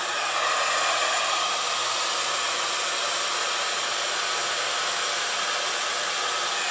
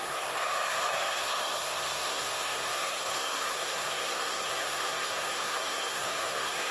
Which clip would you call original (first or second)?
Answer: first